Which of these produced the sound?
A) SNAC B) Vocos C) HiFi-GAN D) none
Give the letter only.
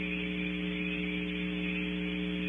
D